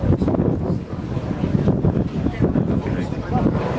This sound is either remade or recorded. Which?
recorded